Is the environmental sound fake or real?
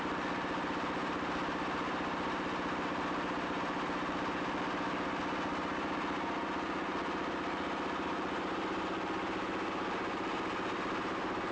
real